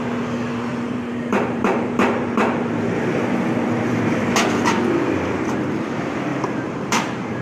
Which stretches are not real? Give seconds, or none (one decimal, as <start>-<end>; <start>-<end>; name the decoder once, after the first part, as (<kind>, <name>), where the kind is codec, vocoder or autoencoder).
0.7-3.2 (vocoder, BigVGAN v2); 6.3-7.4